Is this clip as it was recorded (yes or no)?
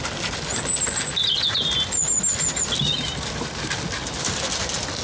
yes